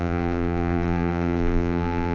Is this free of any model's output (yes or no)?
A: no